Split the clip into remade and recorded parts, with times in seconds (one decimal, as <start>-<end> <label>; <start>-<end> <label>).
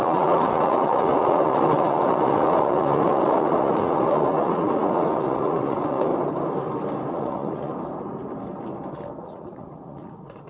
0.0-6.1 remade; 6.1-7.1 recorded; 7.1-7.7 remade; 7.7-9.2 recorded; 9.2-10.5 remade